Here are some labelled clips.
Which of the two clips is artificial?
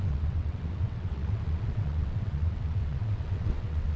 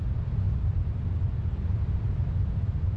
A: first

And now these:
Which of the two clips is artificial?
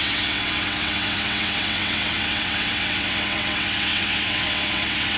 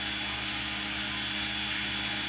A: first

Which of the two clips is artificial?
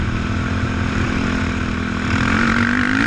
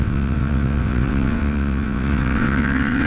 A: second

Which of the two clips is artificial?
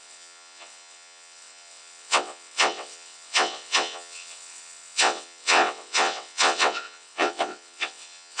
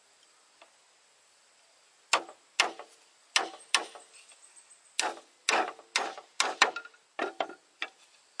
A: first